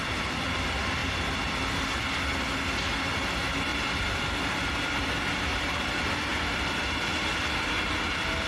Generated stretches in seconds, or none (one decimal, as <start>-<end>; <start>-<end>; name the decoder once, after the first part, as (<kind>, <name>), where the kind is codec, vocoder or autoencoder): 3.7-5.8 (vocoder, BigVGAN v2)